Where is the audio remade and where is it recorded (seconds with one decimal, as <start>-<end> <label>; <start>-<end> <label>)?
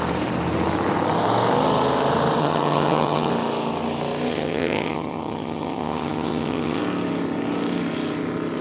0.0-2.4 recorded; 2.4-3.3 remade; 3.3-4.3 recorded; 4.3-6.8 remade; 6.8-8.6 recorded